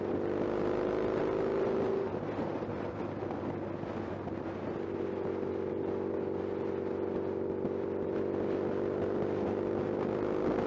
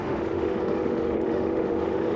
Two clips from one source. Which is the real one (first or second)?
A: first